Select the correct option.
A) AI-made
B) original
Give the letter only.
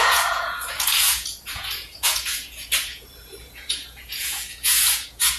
A